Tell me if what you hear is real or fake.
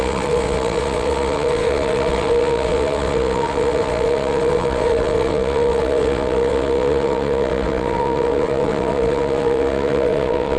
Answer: fake